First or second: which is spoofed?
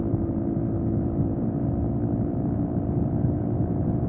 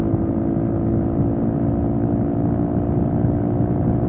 first